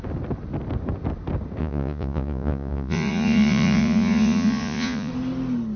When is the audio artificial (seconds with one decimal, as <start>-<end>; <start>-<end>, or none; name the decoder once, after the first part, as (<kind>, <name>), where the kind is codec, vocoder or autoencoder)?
1.6-5.1 (vocoder, Vocos)